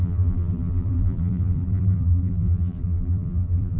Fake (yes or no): yes